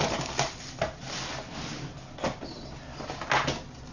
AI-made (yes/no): no